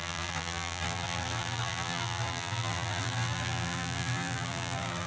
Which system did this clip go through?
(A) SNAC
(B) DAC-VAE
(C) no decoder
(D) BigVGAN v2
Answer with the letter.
D